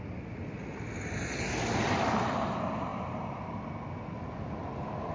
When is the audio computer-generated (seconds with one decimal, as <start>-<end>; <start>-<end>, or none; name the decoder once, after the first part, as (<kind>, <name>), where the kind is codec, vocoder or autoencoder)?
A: none